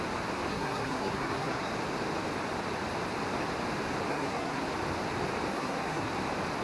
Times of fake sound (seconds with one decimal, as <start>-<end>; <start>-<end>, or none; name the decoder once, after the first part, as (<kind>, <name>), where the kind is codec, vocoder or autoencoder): 0.5-1.7 (codec, SNAC); 4.1-4.6; 5.5-6.1